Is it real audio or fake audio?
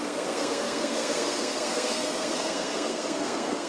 fake